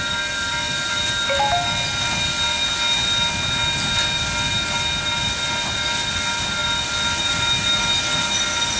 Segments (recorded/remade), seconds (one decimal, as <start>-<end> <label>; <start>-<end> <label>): 0.0-8.8 recorded